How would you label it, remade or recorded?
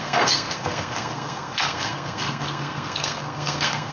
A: remade